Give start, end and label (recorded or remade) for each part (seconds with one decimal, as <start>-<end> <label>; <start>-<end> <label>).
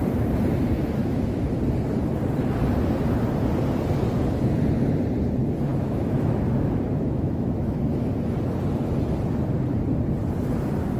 0.0-1.0 recorded; 1.0-1.5 remade; 1.5-5.7 recorded; 5.7-8.1 remade; 8.1-11.0 recorded